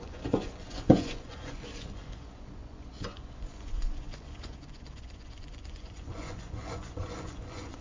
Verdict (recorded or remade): remade